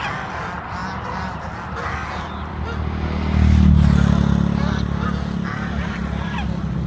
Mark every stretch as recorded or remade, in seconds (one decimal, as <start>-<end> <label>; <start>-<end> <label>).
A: 0.0-6.9 recorded